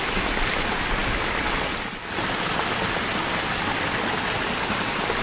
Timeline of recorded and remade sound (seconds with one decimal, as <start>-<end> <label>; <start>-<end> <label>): 0.0-5.2 recorded